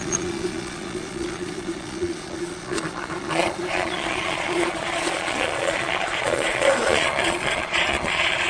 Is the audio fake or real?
fake